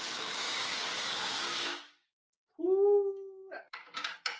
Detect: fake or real fake